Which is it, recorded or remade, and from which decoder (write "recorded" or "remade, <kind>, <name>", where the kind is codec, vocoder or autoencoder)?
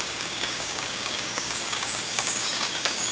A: remade, codec, DAC